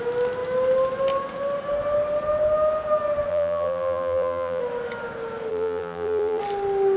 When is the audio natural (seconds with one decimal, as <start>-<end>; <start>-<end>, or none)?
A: 0.0-3.3; 4.6-5.5; 6.4-7.0